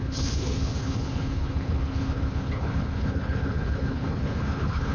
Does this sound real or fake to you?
fake